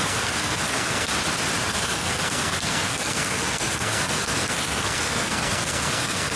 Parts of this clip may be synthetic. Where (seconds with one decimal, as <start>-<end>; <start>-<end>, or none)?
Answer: 0.0-1.1; 1.7-6.4

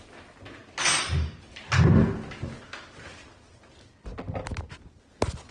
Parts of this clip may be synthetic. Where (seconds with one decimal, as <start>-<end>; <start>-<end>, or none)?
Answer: none

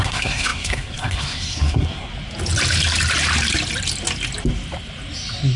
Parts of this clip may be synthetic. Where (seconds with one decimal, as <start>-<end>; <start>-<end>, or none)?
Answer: 0.0-2.1

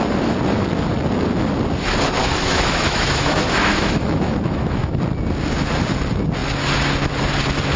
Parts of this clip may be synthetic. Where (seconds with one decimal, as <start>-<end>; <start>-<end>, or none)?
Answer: 2.2-5.0

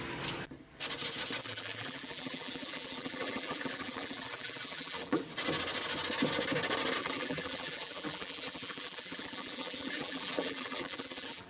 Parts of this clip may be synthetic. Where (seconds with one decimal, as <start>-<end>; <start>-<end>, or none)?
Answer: 1.4-5.2; 7.0-11.5

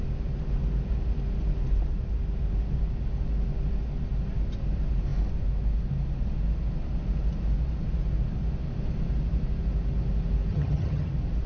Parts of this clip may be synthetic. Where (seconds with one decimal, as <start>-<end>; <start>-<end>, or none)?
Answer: 10.5-11.1